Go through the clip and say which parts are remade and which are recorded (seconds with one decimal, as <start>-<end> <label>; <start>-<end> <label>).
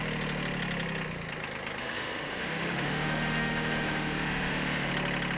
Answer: 0.0-1.8 recorded; 1.8-4.9 remade; 4.9-5.4 recorded